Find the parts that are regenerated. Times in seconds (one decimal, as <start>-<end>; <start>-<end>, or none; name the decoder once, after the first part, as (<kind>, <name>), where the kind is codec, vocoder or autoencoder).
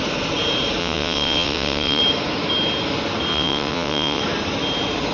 0.8-2.0 (vocoder, WaveNeXt); 3.3-4.2